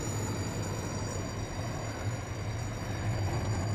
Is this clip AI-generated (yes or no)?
no